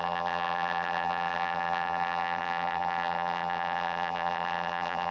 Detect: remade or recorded remade